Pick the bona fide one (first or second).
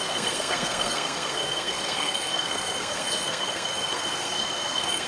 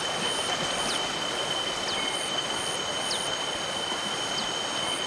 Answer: second